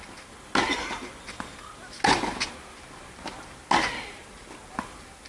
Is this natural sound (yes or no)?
yes